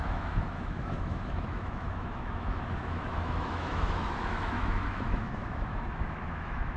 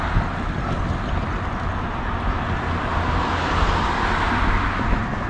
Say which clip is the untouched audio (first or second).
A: second